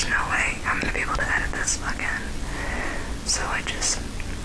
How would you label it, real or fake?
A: real